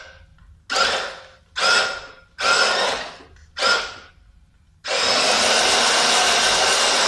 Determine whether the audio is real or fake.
real